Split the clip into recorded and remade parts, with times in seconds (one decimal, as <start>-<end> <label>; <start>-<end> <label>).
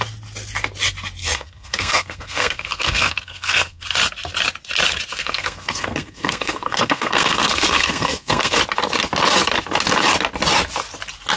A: 0.0-1.2 recorded; 1.2-3.8 remade; 3.8-5.1 recorded; 5.1-8.6 remade; 8.6-11.4 recorded